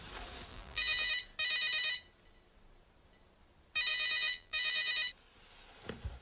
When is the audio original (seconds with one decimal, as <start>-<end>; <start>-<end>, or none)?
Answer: 0.0-0.5; 1.1-3.9; 4.9-6.2